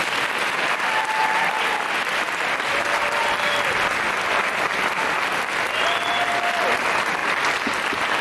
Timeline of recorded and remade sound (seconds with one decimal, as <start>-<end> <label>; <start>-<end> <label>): 0.0-8.2 recorded